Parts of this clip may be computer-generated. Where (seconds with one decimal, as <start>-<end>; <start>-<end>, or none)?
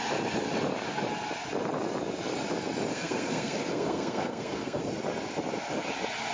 2.9-4.9